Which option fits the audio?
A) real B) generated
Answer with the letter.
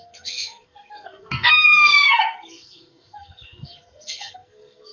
B